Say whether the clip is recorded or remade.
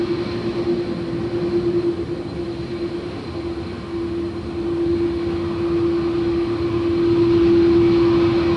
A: recorded